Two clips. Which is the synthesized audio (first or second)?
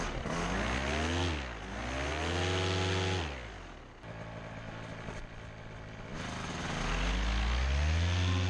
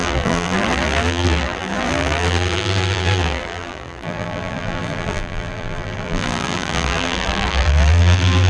second